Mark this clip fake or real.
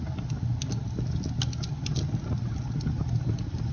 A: real